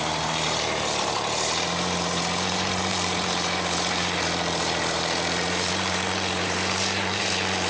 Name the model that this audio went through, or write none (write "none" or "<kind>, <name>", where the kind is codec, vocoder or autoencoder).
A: vocoder, BigVGAN v2